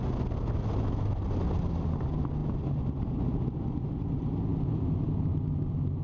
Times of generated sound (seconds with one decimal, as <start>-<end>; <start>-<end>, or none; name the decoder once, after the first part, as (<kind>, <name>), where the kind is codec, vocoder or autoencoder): 2.4-3.2 (vocoder, BigVGAN v2)